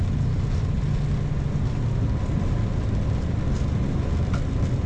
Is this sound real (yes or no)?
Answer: yes